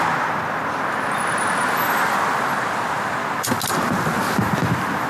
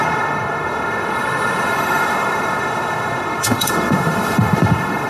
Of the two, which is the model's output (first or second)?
second